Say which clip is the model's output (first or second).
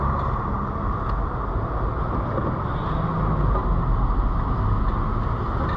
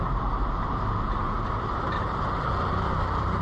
second